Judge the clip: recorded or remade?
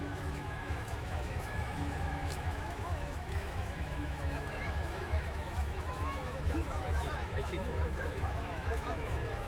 remade